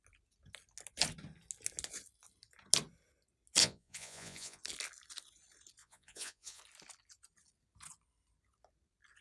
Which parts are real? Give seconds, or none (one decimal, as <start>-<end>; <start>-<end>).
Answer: 0.0-3.6; 4.6-5.8; 6.6-9.2